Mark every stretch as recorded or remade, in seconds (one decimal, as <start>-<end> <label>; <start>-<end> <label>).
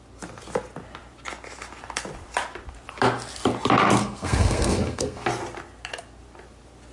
0.0-4.0 recorded; 4.0-5.3 remade; 5.3-6.9 recorded